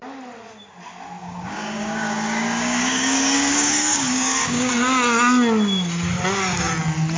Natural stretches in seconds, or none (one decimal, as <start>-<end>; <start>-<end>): 0.0-1.2; 4.7-7.2